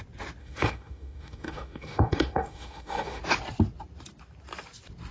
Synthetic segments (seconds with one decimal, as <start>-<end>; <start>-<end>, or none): 0.4-3.2